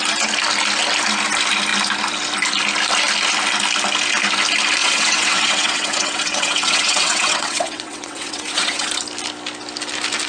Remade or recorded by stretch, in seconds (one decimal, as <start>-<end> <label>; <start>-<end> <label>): 0.0-4.8 recorded; 4.8-8.9 remade; 8.9-10.3 recorded